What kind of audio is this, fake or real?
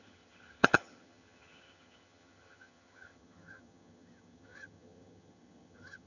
fake